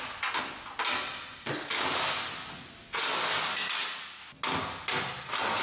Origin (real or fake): real